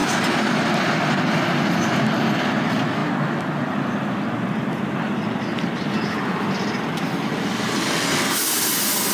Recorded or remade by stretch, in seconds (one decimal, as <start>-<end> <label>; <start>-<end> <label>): 0.0-9.1 recorded